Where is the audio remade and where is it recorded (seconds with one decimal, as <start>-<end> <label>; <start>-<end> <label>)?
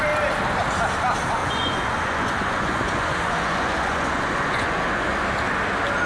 0.0-1.4 recorded; 1.4-5.1 remade; 5.1-6.1 recorded